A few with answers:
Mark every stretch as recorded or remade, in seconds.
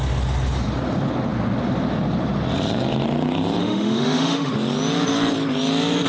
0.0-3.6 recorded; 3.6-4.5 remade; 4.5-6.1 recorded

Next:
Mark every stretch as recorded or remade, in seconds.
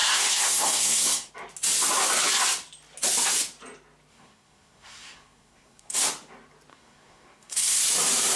0.0-1.3 remade; 1.3-4.1 recorded; 4.1-6.0 remade; 6.0-6.7 recorded; 6.7-7.8 remade; 7.8-8.4 recorded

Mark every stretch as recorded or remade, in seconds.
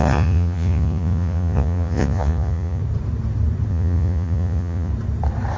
0.0-2.8 remade; 2.8-3.7 recorded; 3.7-4.9 remade; 4.9-5.6 recorded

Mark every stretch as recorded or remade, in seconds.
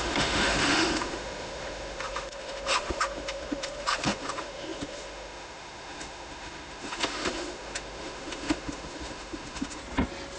0.0-9.8 remade; 9.8-10.4 recorded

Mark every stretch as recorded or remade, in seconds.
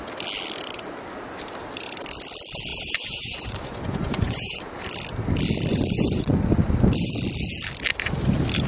0.0-2.7 recorded; 2.7-4.6 remade; 4.6-5.7 recorded; 5.7-6.4 remade; 6.4-8.7 recorded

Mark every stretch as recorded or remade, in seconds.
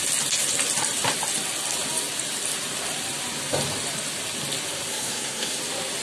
0.0-4.9 recorded; 4.9-5.6 remade; 5.6-6.0 recorded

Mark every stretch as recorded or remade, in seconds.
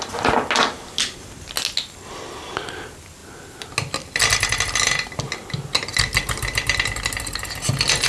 0.0-8.1 recorded